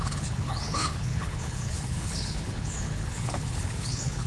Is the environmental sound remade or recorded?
remade